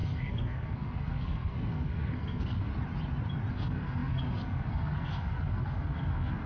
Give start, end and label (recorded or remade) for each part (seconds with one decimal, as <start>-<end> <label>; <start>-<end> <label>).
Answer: 0.0-2.7 remade; 2.7-3.5 recorded; 3.5-6.5 remade